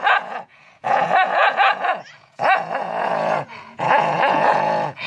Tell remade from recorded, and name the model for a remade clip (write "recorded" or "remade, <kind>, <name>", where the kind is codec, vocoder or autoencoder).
remade, vocoder, Vocos